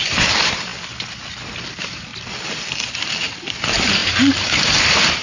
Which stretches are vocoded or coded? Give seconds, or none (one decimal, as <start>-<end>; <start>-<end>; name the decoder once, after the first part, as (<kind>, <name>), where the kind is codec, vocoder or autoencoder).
0.0-0.7 (vocoder, BigVGAN v2); 1.7-2.1; 2.7-5.2